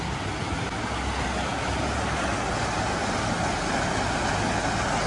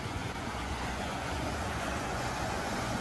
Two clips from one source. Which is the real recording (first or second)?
first